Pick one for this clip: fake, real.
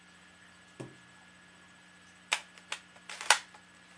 real